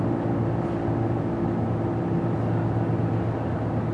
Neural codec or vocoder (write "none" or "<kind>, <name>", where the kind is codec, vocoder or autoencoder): none